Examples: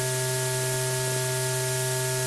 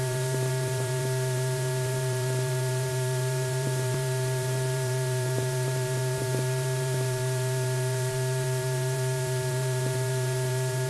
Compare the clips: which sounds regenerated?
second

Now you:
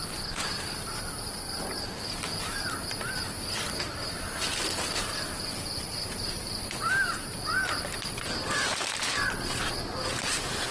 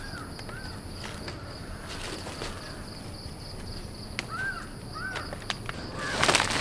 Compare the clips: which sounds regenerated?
first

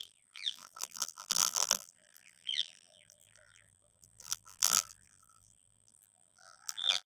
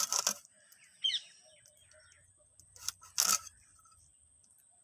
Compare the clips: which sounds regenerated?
first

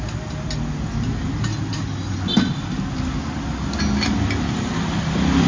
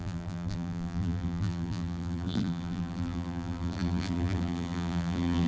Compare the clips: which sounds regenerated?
second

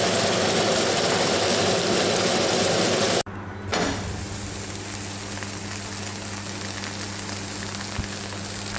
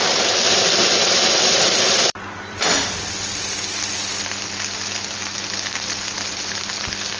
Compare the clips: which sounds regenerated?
second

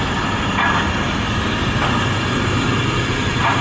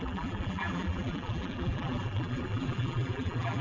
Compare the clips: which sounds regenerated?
second